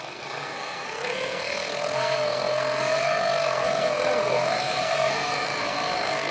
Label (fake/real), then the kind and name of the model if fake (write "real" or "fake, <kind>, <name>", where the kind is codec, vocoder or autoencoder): fake, codec, SNAC